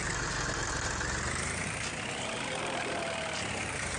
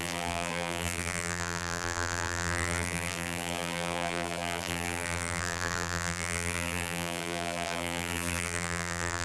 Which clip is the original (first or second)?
first